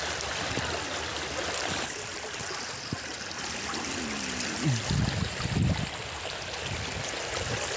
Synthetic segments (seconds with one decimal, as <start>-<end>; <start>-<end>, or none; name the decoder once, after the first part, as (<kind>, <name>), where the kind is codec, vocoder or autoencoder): none